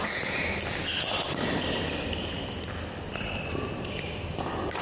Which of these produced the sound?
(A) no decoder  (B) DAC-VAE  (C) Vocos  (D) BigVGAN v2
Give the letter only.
A